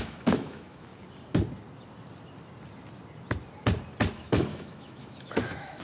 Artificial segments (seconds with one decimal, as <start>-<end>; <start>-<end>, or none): 0.0-0.9; 4.1-5.8